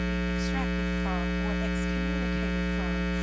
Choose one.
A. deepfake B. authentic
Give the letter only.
B